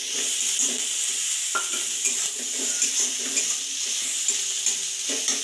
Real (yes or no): yes